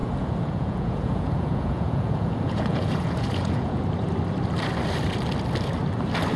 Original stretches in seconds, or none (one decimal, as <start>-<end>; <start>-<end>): 3.8-6.4